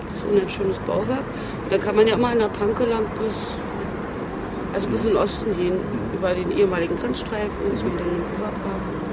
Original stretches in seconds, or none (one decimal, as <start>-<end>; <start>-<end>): 0.0-9.1